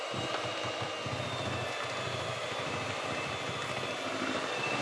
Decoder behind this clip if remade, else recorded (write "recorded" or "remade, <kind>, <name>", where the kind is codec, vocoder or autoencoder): remade, vocoder, BigVGAN v2